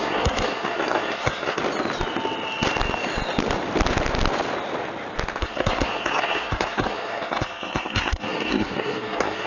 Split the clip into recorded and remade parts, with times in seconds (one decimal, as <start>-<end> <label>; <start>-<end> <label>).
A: 0.0-1.6 remade; 1.6-5.4 recorded; 5.4-9.5 remade